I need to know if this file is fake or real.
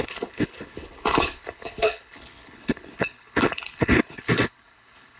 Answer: fake